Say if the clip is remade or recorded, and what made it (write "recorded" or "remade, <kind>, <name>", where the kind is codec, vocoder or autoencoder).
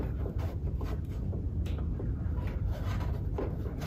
remade, vocoder, BigVGAN v2